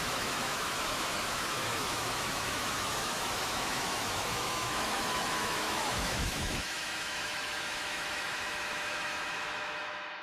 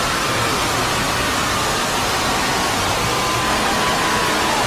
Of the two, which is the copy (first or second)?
first